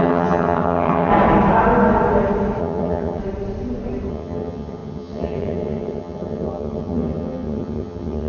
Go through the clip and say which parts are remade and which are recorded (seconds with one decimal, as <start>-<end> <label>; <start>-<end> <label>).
0.0-1.1 remade; 1.1-2.6 recorded; 2.6-3.2 remade; 3.2-4.1 recorded; 4.1-8.3 remade